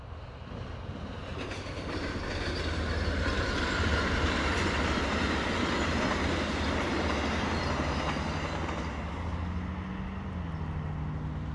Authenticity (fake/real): real